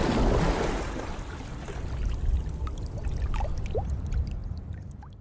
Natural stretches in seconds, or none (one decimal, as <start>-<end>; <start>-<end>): 0.0-4.4